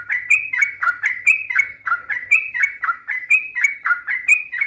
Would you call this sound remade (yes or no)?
yes